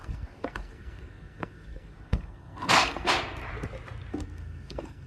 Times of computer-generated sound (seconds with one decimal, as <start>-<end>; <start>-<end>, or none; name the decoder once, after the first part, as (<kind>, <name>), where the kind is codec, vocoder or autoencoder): 0.0-3.1 (codec, SNAC); 4.1-5.1